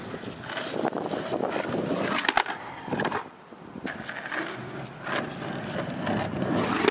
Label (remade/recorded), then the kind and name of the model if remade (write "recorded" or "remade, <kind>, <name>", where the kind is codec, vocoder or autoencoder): recorded